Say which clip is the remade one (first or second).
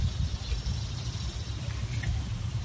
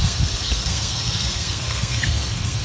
second